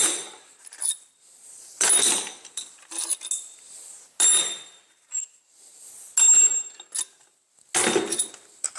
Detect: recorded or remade recorded